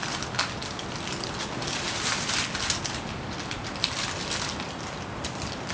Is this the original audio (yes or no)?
yes